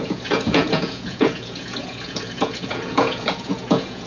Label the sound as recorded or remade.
remade